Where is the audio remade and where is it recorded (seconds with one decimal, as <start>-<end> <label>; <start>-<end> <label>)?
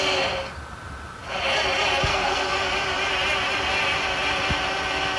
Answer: 0.0-2.1 recorded; 2.1-2.6 remade; 2.6-5.2 recorded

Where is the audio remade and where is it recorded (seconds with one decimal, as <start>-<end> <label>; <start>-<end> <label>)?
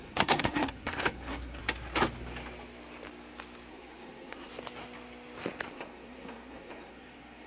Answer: 0.0-1.6 remade; 1.6-3.7 recorded; 3.7-4.5 remade; 4.5-5.7 recorded; 5.7-7.5 remade